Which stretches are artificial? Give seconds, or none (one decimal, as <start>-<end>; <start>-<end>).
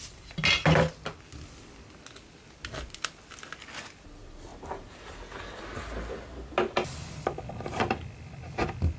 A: 4.5-5.1